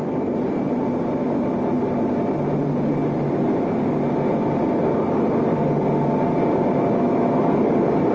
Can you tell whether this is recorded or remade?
recorded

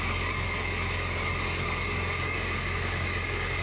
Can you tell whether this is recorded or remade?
remade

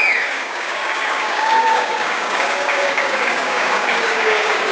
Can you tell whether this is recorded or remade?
remade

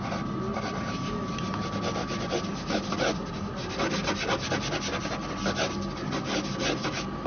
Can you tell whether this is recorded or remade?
recorded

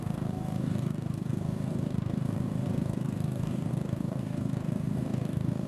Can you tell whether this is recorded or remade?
remade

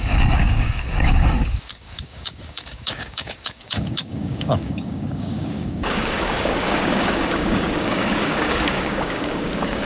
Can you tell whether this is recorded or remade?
remade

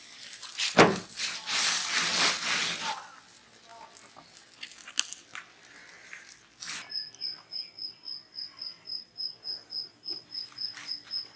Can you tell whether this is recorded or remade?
recorded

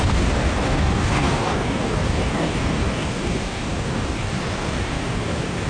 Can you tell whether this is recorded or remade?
remade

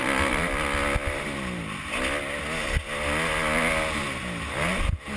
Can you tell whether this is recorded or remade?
recorded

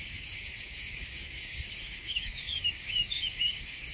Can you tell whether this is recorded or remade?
remade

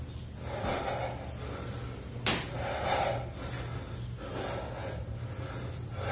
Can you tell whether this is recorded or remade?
recorded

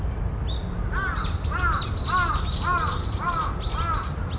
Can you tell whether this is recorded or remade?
recorded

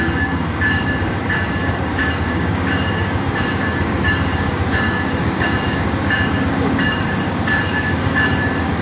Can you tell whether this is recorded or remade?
remade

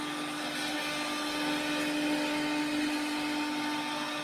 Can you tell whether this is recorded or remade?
recorded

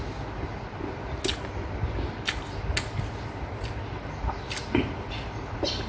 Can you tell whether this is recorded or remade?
recorded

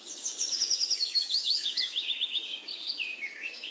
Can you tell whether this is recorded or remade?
remade